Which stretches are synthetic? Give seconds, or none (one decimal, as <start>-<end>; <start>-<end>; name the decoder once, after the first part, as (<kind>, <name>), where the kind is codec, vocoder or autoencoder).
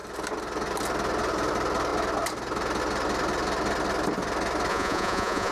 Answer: 4.7-5.5 (vocoder, Vocos)